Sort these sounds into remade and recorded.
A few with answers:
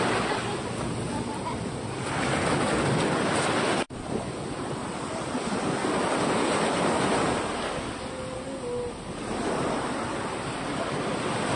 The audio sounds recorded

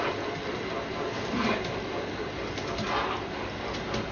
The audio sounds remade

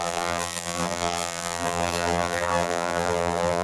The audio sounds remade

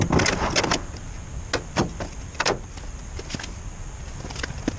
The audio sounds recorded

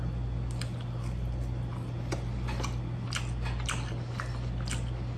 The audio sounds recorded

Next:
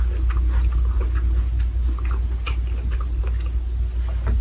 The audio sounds recorded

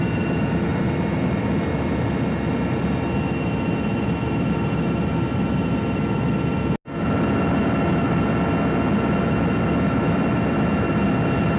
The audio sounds recorded